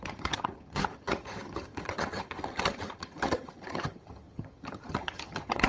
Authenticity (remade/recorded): remade